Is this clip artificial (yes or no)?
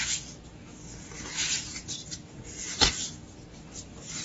no